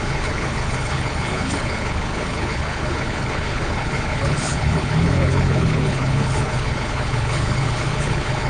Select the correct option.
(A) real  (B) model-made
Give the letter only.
B